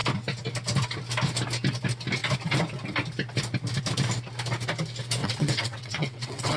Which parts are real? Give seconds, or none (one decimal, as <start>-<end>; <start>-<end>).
0.0-5.2